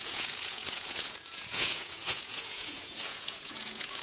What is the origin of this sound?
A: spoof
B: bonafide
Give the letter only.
A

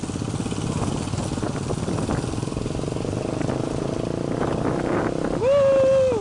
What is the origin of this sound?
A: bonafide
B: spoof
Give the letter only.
A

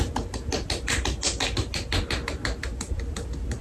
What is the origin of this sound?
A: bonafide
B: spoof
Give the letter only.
A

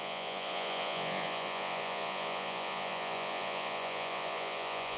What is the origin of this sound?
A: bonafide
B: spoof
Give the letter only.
B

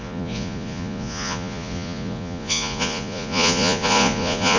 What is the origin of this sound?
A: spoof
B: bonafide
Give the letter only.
A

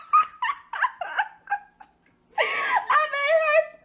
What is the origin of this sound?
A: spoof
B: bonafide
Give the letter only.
B